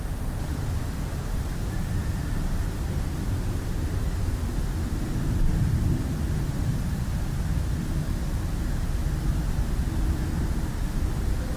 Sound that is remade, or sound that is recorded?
recorded